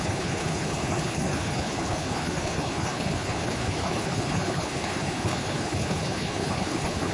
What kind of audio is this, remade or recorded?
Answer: remade